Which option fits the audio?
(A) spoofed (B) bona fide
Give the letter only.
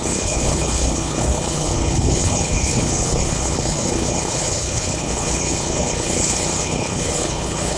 A